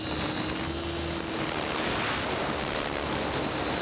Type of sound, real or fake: real